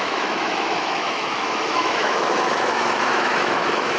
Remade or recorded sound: remade